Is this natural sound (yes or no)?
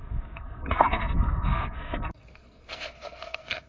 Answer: no